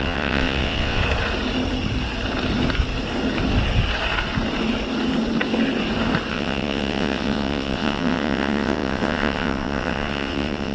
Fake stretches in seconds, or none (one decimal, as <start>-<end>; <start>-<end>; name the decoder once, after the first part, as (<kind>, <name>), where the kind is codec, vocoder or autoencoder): 0.0-1.0 (vocoder, WaveNeXt); 6.3-10.7